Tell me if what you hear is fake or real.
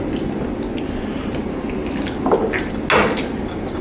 real